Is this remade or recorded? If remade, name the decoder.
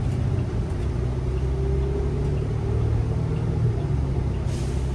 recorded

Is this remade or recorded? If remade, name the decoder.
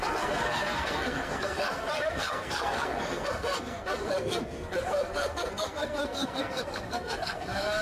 remade, codec, SNAC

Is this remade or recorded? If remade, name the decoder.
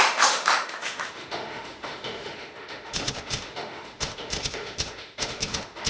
remade, autoencoder, DAC-VAE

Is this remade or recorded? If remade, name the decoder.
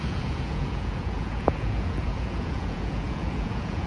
remade, vocoder, Vocos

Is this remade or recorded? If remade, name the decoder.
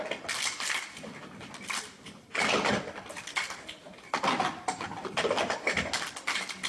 recorded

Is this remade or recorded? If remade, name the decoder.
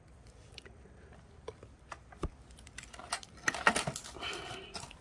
recorded